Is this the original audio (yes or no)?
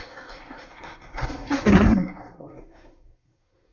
no